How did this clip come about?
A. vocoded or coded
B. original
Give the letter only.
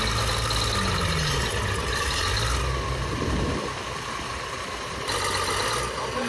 B